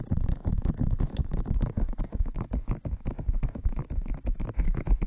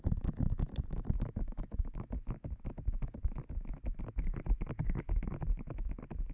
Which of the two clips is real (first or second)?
second